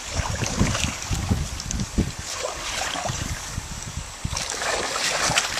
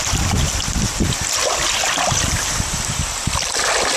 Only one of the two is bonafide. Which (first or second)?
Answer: second